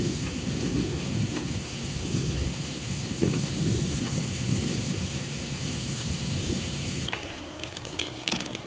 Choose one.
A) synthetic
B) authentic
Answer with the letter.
A